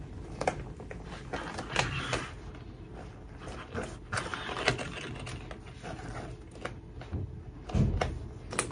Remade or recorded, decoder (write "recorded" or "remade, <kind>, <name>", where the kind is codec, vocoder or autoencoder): recorded